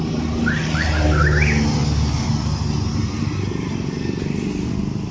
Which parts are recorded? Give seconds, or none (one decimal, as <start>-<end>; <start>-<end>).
0.0-5.1